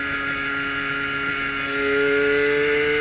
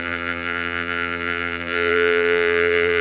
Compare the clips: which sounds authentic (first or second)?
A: first